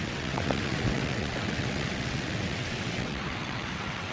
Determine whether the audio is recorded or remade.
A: remade